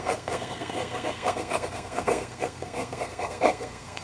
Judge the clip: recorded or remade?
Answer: remade